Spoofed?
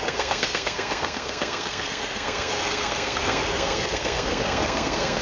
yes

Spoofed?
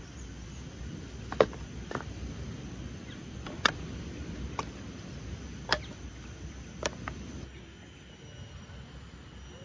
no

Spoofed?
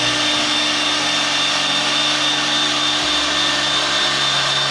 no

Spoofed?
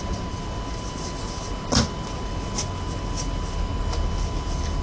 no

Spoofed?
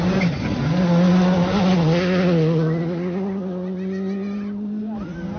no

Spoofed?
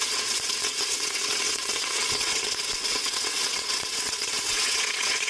yes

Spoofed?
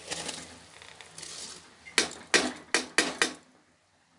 no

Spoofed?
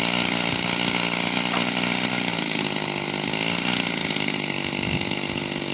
no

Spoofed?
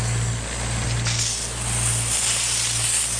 no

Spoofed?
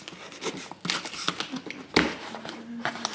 no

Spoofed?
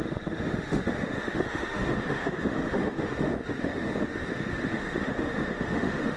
yes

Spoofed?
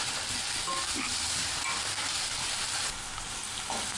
no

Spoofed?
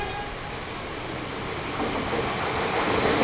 no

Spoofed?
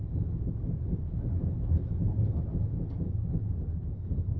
no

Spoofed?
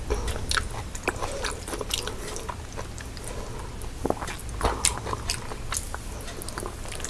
no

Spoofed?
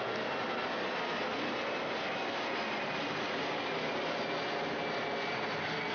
no